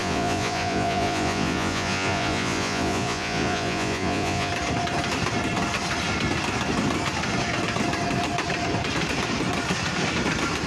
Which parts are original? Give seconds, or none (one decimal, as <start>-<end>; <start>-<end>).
4.5-10.7